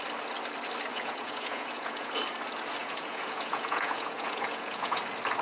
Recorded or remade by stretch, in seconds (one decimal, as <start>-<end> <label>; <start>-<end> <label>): 0.0-0.9 recorded; 0.9-2.1 remade; 2.1-2.8 recorded; 2.8-5.0 remade; 5.0-5.4 recorded